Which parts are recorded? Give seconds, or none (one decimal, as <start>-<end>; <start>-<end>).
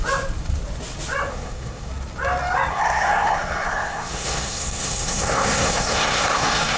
0.0-1.3; 1.9-2.7